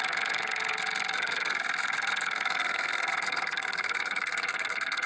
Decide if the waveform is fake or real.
fake